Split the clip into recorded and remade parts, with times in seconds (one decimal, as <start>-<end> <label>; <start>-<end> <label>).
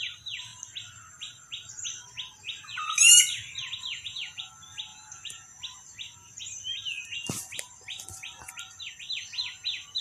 0.0-3.9 recorded; 3.9-4.5 remade; 4.5-4.9 recorded; 4.9-5.6 remade; 5.6-10.0 recorded